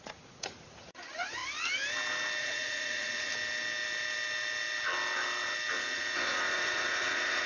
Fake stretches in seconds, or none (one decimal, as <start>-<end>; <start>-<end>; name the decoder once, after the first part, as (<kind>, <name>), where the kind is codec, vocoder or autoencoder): 0.0-1.4 (vocoder, Vocos); 2.4-3.3; 5.8-7.5